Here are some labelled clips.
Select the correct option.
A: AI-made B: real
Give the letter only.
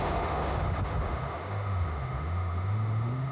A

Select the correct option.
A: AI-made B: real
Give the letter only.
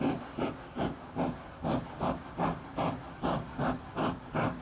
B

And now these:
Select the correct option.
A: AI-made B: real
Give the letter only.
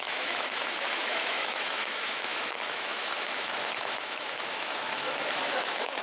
A